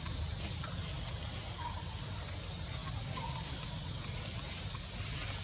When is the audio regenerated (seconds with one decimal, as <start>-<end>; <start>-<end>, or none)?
none